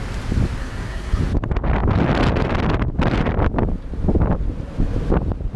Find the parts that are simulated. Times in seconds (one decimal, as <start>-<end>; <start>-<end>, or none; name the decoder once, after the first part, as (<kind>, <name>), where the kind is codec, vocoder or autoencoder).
0.6-1.2 (codec, SNAC)